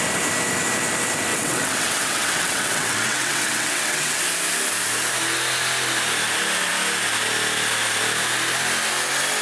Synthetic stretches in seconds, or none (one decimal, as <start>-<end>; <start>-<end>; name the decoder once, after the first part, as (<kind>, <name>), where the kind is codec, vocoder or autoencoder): 1.3-4.2 (vocoder, WaveNeXt)